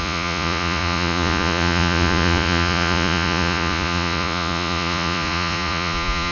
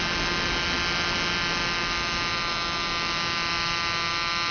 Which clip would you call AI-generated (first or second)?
first